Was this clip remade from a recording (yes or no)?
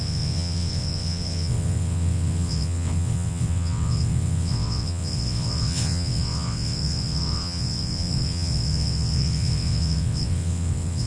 yes